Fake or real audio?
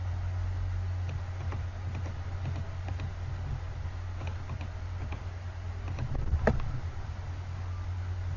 real